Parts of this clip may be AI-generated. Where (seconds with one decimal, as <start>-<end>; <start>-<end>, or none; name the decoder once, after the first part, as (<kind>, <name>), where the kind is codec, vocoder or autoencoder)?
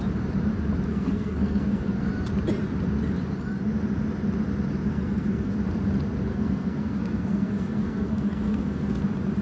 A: 0.9-2.1 (codec, SNAC); 4.9-5.5; 6.3-9.0